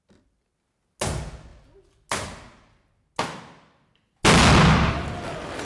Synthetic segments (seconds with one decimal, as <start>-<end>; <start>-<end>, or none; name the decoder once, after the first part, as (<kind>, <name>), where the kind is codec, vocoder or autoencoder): none